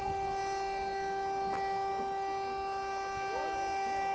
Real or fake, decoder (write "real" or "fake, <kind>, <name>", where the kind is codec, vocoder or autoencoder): real